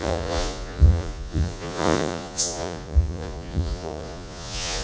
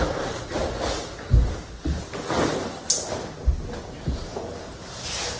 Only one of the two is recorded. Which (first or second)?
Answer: second